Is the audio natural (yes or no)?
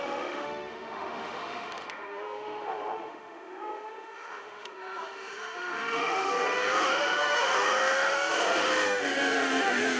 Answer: no